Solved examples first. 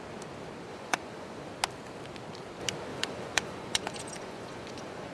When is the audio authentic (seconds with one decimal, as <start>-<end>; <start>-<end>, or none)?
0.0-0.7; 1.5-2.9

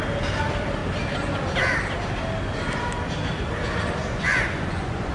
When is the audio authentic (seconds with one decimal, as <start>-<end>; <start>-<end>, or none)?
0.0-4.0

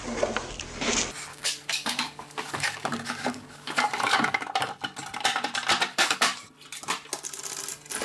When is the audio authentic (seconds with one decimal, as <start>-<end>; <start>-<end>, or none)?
0.0-1.3; 4.4-5.9; 6.4-8.0

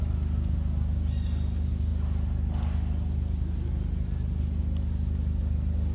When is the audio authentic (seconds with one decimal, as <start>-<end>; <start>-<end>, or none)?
0.0-5.9

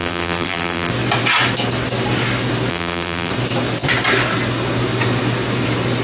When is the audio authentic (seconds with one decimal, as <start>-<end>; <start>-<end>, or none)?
0.9-2.7; 3.3-6.0

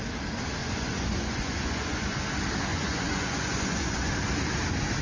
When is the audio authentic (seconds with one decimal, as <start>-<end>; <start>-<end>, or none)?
0.0-0.6; 2.2-2.7; 4.1-5.0

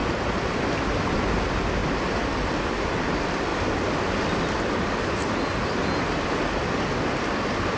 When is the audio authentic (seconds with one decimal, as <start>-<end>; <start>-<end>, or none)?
0.0-7.8